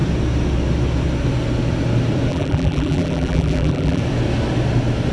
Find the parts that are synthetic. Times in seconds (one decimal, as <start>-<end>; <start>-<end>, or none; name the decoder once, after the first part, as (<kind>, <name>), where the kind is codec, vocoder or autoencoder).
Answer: 2.3-4.0 (vocoder, BigVGAN v2)